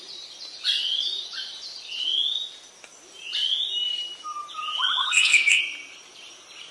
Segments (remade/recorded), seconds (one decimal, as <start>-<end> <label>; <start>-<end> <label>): 0.0-5.0 recorded; 5.0-5.6 remade; 5.6-6.7 recorded